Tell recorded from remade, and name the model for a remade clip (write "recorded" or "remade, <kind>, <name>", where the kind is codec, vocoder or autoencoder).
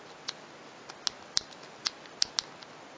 recorded